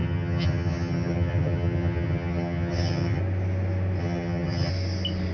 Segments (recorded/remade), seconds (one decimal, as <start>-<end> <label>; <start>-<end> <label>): 0.0-3.2 remade; 3.2-4.0 recorded; 4.0-4.7 remade; 4.7-5.3 recorded